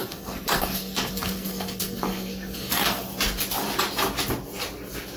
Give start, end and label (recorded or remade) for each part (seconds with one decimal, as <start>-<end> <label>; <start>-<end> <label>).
0.0-3.1 remade; 3.1-5.2 recorded